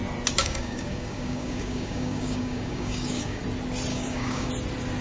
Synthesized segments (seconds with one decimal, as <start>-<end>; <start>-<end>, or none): 0.4-3.4; 3.9-4.5